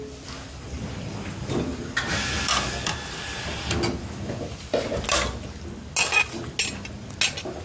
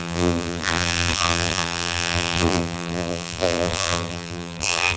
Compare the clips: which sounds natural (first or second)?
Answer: first